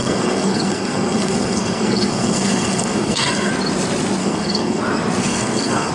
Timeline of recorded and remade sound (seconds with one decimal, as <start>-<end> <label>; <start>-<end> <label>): 0.0-3.5 remade; 3.5-4.2 recorded; 4.2-4.8 remade; 4.8-5.2 recorded; 5.2-5.9 remade